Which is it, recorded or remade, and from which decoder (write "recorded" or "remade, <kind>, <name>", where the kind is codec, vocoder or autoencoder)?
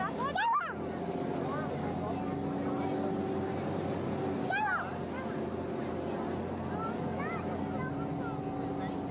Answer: recorded